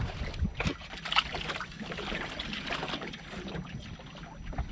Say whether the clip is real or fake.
real